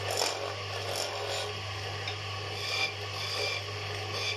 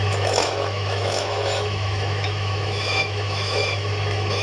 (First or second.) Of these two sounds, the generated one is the second